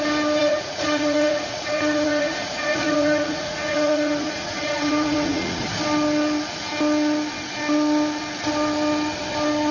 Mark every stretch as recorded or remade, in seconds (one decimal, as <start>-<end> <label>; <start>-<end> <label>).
0.0-0.4 recorded; 0.4-5.6 remade; 5.6-9.7 recorded